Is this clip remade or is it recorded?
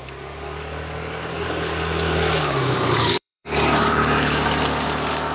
remade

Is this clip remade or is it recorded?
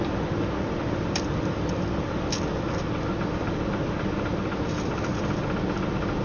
recorded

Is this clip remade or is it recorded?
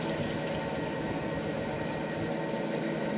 recorded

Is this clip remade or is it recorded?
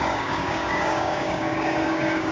remade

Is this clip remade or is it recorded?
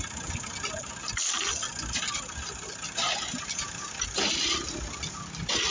recorded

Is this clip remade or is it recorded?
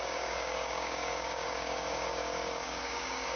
remade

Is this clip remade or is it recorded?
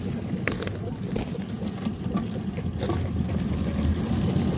recorded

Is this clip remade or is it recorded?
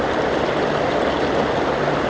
recorded